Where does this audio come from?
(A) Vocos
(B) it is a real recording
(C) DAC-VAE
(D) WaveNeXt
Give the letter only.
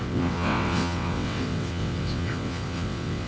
D